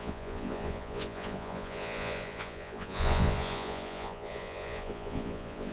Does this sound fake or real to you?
fake